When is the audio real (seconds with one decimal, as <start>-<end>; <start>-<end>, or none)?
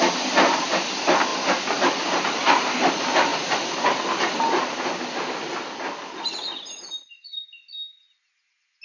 0.0-8.8